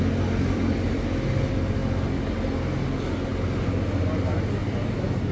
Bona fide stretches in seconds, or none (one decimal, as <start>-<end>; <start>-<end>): 0.0-5.3